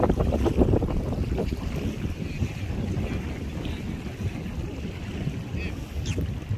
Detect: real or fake real